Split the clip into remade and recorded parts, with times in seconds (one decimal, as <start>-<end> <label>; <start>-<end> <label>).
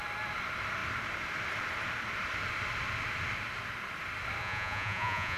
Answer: 0.0-4.4 recorded; 4.4-5.4 remade